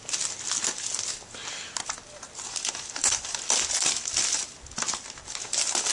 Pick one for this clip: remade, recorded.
recorded